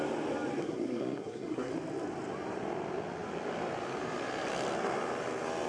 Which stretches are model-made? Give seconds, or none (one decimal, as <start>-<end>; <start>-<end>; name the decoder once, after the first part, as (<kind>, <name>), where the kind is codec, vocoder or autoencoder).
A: 0.6-1.7 (codec, SNAC)

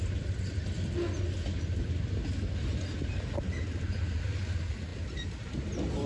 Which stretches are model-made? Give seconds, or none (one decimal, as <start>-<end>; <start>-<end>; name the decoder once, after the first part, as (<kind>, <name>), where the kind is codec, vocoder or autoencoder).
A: none

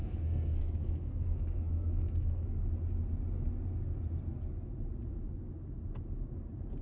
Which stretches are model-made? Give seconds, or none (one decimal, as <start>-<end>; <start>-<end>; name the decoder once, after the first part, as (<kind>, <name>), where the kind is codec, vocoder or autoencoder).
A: 0.0-2.6 (codec, SNAC)

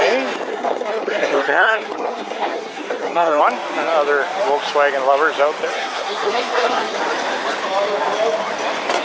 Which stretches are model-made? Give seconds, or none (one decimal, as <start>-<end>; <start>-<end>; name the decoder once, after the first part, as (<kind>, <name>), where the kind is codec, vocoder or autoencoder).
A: 0.5-3.4 (codec, SNAC); 5.7-7.0